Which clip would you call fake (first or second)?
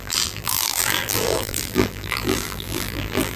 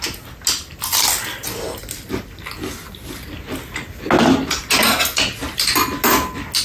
first